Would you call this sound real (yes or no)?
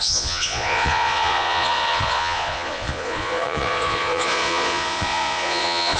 no